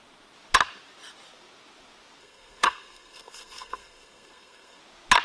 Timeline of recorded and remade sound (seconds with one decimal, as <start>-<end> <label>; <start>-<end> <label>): 0.0-2.2 recorded; 2.2-4.8 remade; 4.8-5.2 recorded